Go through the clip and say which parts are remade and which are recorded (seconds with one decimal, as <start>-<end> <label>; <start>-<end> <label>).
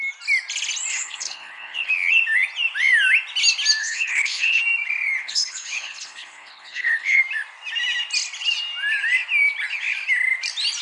0.0-0.9 recorded; 0.9-1.9 remade; 1.9-3.8 recorded; 3.8-4.6 remade; 4.6-5.2 recorded; 5.2-7.2 remade; 7.2-10.8 recorded